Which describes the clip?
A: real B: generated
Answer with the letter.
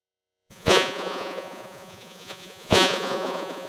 B